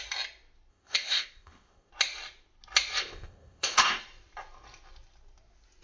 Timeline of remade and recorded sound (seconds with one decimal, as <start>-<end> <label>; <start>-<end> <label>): 0.0-0.7 recorded; 0.7-1.9 remade; 1.9-3.0 recorded; 3.0-4.0 remade; 4.0-5.8 recorded